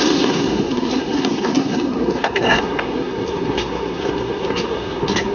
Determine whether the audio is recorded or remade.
remade